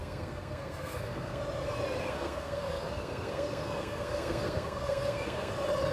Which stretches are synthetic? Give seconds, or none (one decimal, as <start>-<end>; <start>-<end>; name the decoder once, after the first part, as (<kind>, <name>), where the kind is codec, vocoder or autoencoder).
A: 0.0-1.4 (codec, SNAC); 2.0-5.5